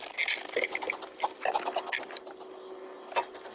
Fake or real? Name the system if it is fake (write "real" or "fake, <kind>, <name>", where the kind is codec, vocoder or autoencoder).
real